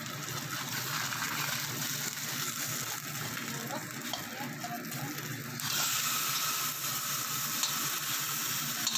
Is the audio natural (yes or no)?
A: yes